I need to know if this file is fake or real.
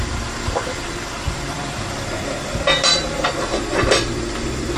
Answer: fake